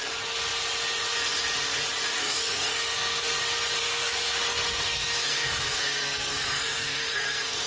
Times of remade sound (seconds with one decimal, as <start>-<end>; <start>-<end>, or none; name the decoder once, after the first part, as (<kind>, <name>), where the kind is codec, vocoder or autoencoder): 2.2-3.4 (codec, SNAC); 3.8-7.7